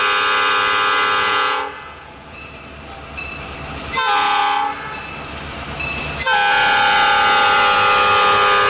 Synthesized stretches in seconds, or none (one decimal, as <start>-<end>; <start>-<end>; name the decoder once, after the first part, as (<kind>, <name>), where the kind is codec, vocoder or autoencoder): 1.2-2.5 (vocoder, Vocos)